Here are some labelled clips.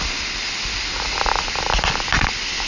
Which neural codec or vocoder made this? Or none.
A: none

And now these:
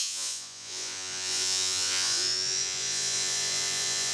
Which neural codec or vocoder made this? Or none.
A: vocoder, Vocos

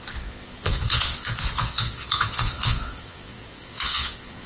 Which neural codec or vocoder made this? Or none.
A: vocoder, Vocos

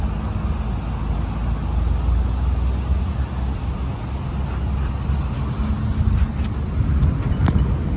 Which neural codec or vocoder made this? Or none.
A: none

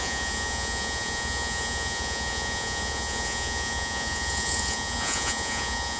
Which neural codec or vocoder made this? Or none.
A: vocoder, Vocos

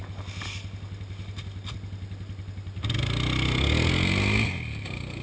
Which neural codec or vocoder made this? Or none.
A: none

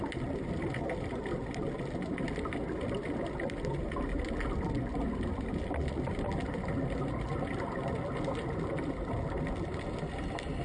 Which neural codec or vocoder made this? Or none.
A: none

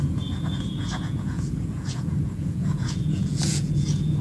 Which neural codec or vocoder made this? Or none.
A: vocoder, Vocos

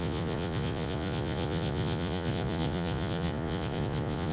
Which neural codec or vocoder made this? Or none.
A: vocoder, Vocos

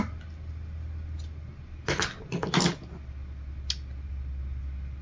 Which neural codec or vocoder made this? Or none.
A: none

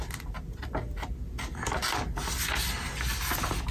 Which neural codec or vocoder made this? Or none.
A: none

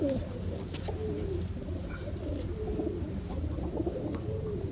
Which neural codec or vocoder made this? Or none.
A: none